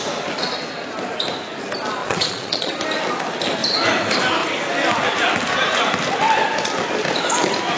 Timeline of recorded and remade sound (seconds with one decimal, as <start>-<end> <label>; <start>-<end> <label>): 0.0-2.0 recorded; 2.0-2.7 remade; 2.7-7.8 recorded